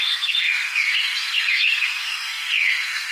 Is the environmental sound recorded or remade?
remade